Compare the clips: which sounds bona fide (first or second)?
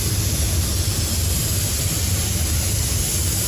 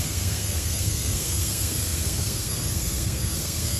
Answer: first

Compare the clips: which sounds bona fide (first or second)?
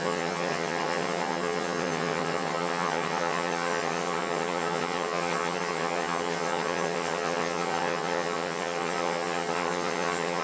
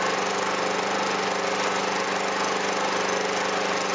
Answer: second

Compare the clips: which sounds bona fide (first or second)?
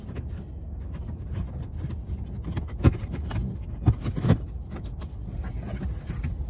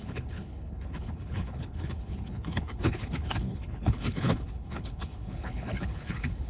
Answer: first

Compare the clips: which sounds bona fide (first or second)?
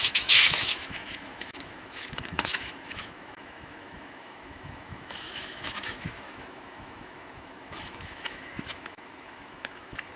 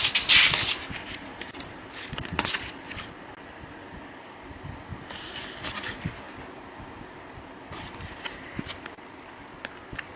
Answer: second